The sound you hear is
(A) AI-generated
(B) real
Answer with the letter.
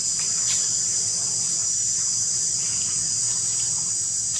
A